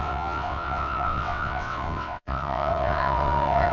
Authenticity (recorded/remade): remade